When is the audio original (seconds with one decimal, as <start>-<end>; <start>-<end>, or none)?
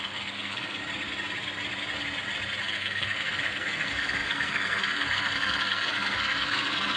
0.8-2.6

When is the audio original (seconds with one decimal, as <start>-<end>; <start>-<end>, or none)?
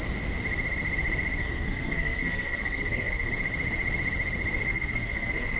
0.0-1.4; 3.3-4.7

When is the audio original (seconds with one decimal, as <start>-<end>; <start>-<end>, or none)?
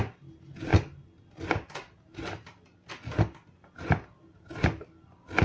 0.0-5.4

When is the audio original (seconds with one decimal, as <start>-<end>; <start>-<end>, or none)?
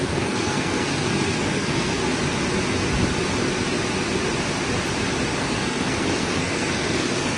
2.0-5.4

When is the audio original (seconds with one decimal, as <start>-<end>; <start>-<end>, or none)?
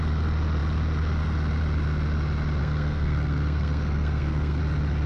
0.0-2.6; 4.6-5.1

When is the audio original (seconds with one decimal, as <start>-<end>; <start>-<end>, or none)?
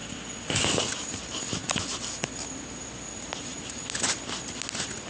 0.0-5.1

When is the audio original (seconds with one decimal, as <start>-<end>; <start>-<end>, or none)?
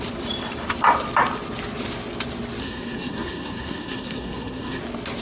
0.0-2.6; 4.8-5.2